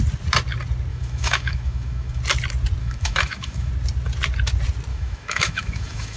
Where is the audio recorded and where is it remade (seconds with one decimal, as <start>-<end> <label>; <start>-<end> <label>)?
0.0-0.9 recorded; 0.9-2.2 remade; 2.2-2.8 recorded; 2.8-3.7 remade; 3.7-4.9 recorded; 4.9-6.2 remade